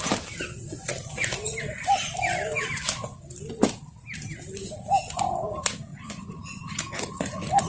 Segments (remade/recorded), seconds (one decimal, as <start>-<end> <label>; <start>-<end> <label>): 0.0-5.9 recorded; 5.9-7.7 remade